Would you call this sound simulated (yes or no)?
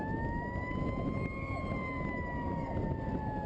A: no